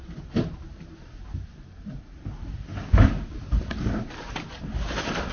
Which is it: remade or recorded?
remade